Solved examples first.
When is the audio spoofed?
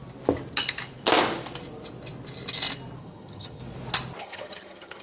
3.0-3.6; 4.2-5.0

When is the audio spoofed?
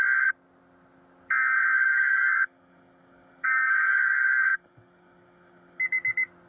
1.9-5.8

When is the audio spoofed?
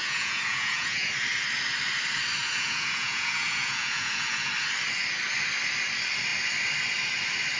0.0-1.1; 2.4-4.5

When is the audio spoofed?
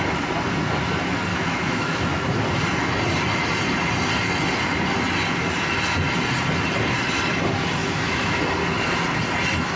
1.3-2.2; 7.8-8.4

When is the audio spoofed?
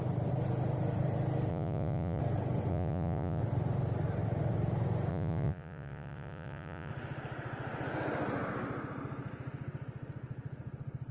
1.5-2.2; 2.7-3.4; 5.1-6.9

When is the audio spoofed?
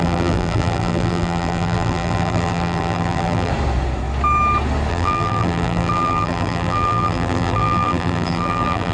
0.0-3.5; 4.9-8.9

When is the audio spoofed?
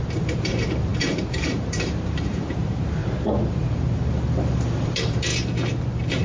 0.0-3.0; 3.5-5.3